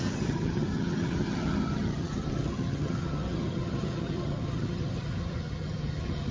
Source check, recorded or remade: remade